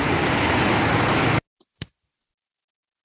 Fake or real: real